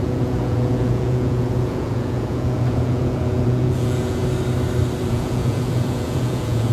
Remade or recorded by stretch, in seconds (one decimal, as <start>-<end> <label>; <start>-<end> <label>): 0.0-4.2 remade; 4.2-5.1 recorded; 5.1-6.7 remade